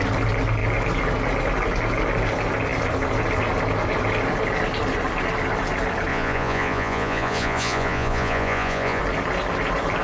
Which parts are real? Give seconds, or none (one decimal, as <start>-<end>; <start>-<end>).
0.0-6.1; 9.0-10.0